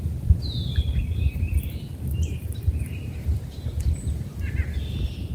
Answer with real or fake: fake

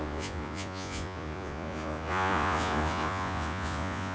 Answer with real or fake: fake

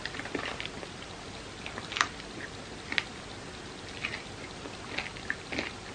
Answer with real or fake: real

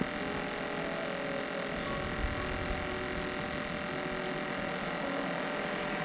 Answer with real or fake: real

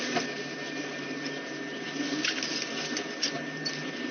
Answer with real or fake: real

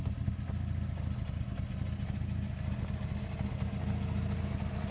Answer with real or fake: real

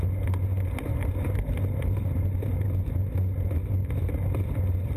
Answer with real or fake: real